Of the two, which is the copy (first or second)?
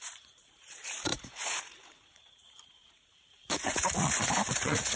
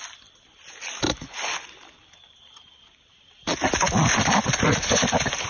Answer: first